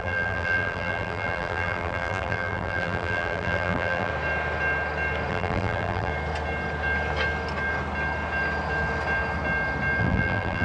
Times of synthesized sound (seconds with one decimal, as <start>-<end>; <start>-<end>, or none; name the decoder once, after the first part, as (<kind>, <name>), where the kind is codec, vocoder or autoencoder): 0.0-4.1 (vocoder, BigVGAN v2); 5.3-6.1; 10.0-10.6